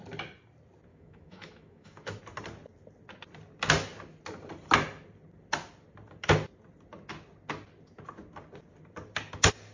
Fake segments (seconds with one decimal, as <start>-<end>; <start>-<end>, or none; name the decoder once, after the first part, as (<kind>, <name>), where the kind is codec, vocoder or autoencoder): 0.9-2.2 (autoencoder, DAC-VAE)